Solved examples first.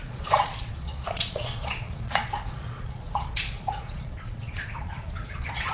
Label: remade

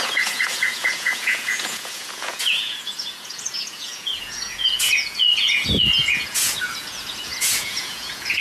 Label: remade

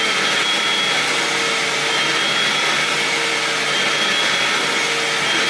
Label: recorded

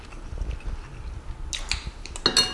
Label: recorded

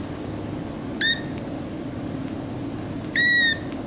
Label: recorded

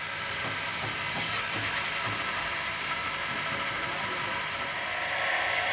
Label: recorded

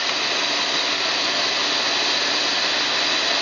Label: recorded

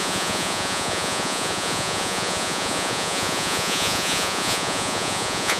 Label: remade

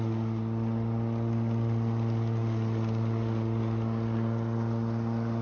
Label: recorded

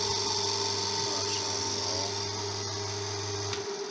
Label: recorded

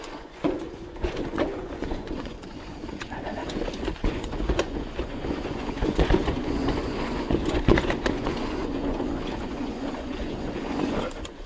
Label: remade